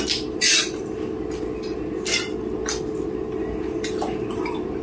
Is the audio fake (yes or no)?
yes